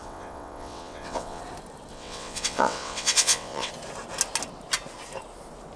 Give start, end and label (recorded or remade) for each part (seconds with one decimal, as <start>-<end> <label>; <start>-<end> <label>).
0.0-1.4 remade; 1.4-1.9 recorded; 1.9-3.7 remade; 3.7-5.8 recorded